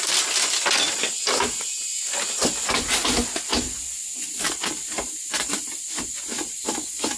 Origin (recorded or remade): recorded